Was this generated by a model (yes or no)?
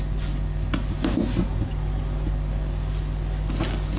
no